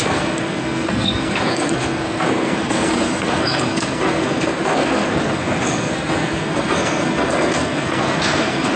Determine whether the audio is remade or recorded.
remade